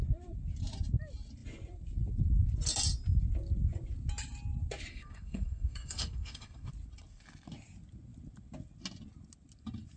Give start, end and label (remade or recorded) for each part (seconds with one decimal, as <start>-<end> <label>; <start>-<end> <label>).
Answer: 0.0-4.9 recorded; 4.9-6.7 remade; 6.7-10.0 recorded